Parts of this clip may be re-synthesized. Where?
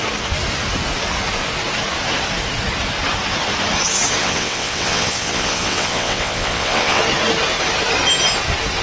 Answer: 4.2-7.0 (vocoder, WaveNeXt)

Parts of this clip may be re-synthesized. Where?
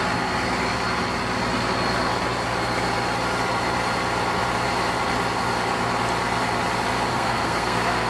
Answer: 7.1-8.1 (codec, SNAC)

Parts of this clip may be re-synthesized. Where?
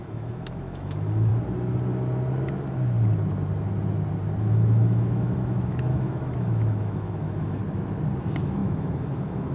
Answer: 0.0-1.3 (autoencoder, DAC-VAE); 4.4-7.6; 8.2-9.5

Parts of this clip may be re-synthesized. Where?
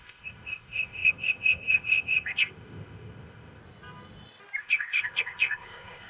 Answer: 0.0-3.6 (codec, ZipCodec); 4.6-6.1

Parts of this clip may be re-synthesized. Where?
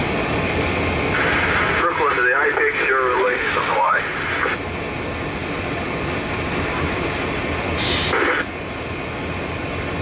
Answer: 3.2-4.0 (autoencoder, DAC-VAE)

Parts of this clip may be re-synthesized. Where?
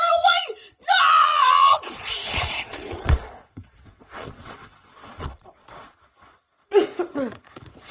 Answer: 0.0-7.9 (vocoder, Vocos)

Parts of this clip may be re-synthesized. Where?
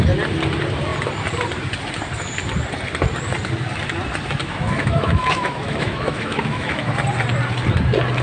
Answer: 4.4-6.9 (autoencoder, DAC-VAE)